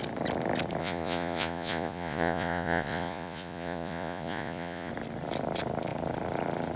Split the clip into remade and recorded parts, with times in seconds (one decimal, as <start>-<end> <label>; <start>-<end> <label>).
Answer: 0.0-0.8 recorded; 0.8-4.9 remade; 4.9-6.8 recorded